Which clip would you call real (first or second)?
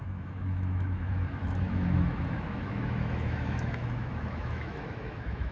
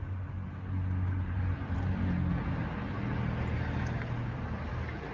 second